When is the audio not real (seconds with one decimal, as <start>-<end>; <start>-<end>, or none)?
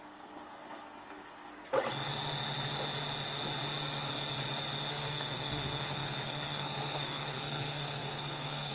0.0-1.5; 4.9-8.7